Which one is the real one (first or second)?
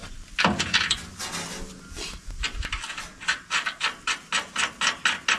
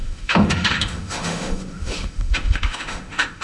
first